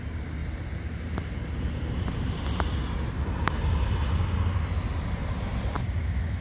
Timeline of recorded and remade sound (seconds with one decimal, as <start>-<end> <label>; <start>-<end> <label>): 0.0-0.4 recorded; 0.4-4.2 remade; 4.2-5.2 recorded; 5.2-5.8 remade; 5.8-6.4 recorded